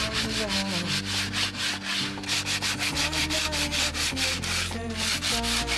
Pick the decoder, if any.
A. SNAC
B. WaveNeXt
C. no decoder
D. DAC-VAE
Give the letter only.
C